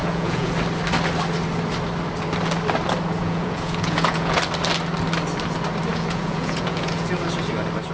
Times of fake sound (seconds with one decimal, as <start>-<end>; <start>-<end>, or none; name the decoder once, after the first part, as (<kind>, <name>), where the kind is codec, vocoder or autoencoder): 0.0-0.5 (vocoder, Vocos); 3.2-4.4; 5.9-7.1